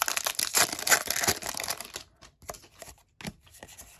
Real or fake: real